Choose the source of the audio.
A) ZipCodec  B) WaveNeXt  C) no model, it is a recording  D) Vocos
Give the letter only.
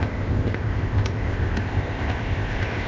A